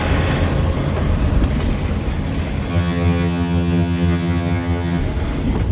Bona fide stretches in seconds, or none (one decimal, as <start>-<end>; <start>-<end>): 0.0-2.7; 5.0-5.7